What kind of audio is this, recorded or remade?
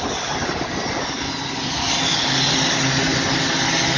recorded